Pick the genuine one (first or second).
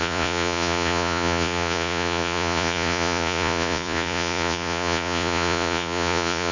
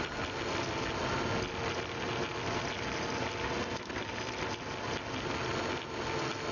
second